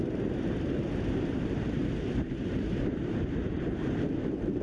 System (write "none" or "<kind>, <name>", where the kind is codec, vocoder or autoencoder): vocoder, BigVGAN v2